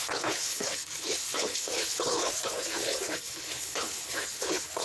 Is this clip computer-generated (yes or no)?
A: yes